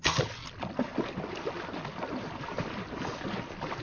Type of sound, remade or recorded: recorded